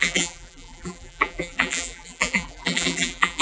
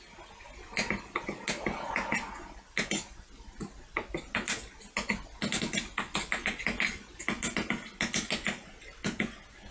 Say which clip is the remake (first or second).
first